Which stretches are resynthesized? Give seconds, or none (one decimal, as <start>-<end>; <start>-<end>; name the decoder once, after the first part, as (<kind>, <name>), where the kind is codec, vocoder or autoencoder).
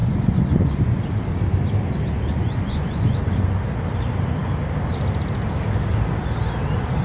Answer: 0.0-1.0 (vocoder, Vocos); 2.4-3.2